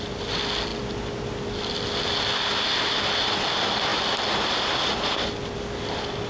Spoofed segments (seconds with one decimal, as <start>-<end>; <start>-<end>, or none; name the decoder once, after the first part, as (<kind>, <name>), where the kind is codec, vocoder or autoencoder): none